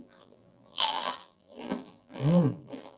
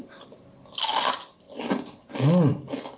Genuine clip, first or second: second